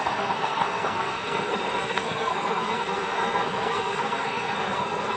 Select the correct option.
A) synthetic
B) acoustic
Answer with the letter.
A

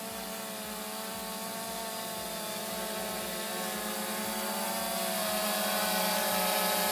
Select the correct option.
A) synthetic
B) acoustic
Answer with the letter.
B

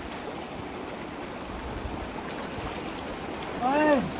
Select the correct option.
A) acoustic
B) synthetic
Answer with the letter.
A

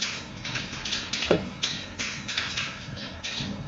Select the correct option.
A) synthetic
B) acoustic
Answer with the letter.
A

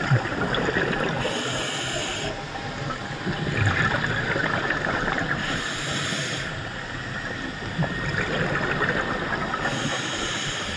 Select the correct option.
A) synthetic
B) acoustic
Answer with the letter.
B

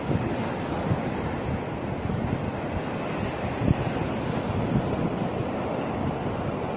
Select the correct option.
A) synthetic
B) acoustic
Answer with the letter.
B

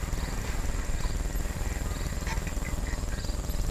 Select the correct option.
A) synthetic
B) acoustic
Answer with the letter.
B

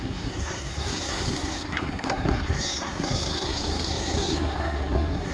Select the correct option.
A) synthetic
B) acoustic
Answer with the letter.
A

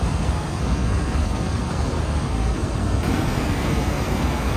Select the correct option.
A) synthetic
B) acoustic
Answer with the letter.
A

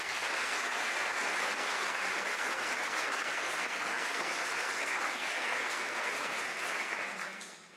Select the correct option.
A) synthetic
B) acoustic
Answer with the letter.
A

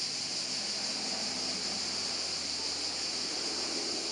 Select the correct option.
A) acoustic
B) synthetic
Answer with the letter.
A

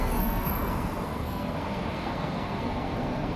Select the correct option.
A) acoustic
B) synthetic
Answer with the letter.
B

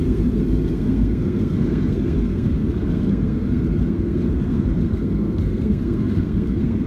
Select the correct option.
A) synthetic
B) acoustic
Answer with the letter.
A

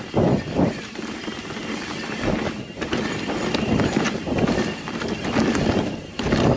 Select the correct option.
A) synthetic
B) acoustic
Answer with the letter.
B